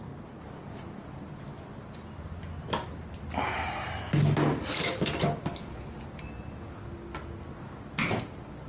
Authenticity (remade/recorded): recorded